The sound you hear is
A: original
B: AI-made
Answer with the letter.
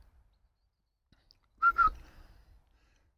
A